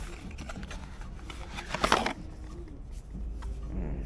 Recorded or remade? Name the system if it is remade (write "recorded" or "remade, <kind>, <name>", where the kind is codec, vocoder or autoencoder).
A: recorded